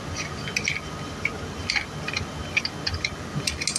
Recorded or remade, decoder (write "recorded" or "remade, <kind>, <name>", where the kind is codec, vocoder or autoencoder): recorded